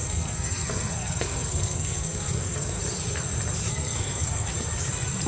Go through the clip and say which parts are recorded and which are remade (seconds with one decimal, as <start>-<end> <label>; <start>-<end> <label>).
0.0-2.8 remade; 2.8-3.7 recorded; 3.7-4.5 remade; 4.5-5.3 recorded